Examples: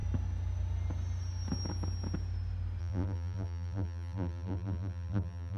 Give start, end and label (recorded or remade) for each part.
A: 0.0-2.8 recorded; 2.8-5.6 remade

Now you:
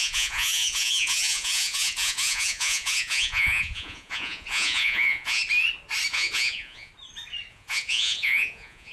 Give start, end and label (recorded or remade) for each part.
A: 0.0-5.4 remade; 5.4-6.1 recorded; 6.1-6.9 remade; 6.9-7.5 recorded; 7.5-8.9 remade

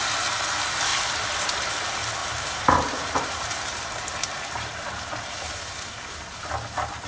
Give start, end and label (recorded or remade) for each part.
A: 0.0-0.9 recorded; 0.9-1.7 remade; 1.7-2.2 recorded; 2.2-6.5 remade; 6.5-7.1 recorded

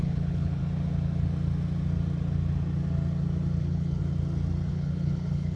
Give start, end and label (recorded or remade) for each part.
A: 0.0-0.6 remade; 0.6-3.6 recorded; 3.6-4.0 remade; 4.0-4.7 recorded; 4.7-5.6 remade

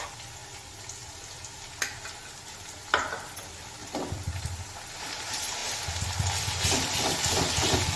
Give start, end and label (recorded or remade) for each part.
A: 0.0-8.0 recorded

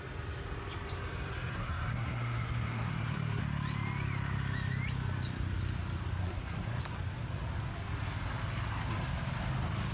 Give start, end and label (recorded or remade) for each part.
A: 0.0-1.5 recorded; 1.5-3.4 remade; 3.4-6.2 recorded; 6.2-6.8 remade; 6.8-9.9 recorded

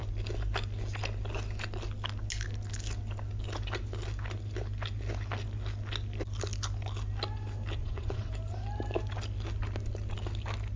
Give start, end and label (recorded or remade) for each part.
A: 0.0-7.8 recorded; 7.8-8.3 remade; 8.3-10.8 recorded